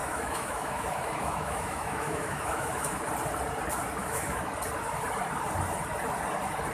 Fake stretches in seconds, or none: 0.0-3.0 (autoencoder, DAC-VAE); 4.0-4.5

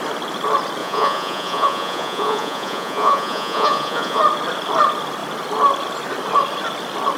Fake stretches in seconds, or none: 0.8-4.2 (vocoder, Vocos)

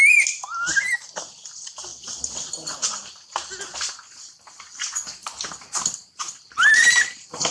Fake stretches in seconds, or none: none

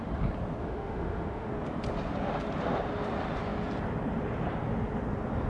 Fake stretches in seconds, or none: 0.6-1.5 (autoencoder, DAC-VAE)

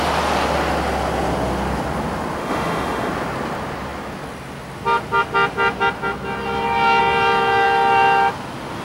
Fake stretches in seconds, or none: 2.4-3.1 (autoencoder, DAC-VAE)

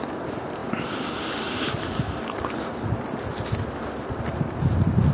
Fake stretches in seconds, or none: none

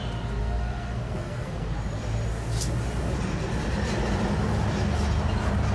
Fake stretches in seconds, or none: 0.4-1.7 (codec, SNAC)

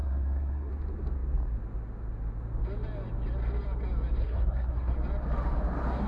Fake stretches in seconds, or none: 0.0-0.7 (codec, SNAC); 4.2-4.9